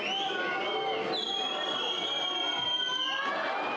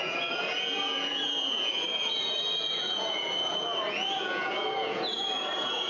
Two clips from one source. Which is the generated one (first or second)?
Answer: second